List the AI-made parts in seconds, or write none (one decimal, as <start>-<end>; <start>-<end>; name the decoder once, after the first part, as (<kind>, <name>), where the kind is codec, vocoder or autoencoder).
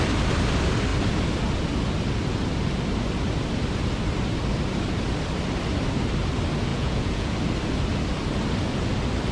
6.7-7.3 (vocoder, Vocos)